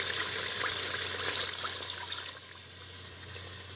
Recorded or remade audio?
recorded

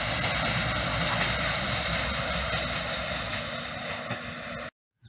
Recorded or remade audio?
recorded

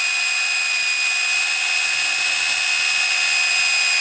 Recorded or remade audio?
recorded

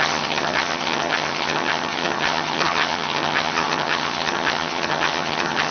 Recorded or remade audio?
remade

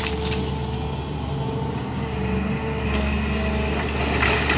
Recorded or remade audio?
recorded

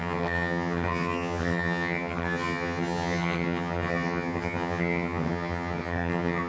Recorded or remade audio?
remade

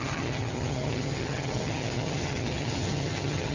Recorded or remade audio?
remade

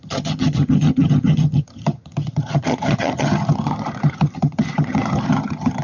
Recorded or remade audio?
remade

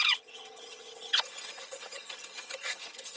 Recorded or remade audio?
remade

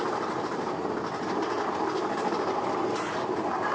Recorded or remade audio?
recorded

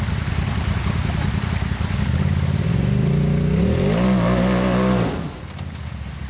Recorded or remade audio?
recorded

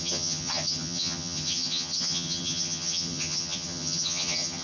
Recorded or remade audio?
remade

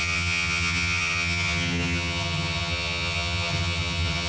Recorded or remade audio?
remade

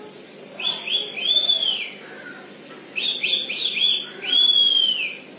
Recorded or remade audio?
recorded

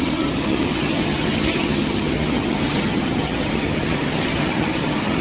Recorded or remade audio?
remade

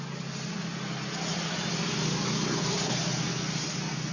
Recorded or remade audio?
recorded